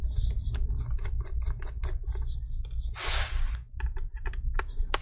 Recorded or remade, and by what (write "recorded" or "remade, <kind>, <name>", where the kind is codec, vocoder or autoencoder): recorded